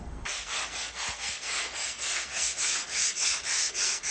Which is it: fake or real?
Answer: fake